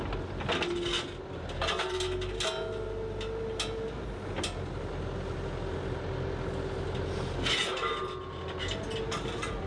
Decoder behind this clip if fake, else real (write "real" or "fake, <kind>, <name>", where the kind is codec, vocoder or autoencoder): real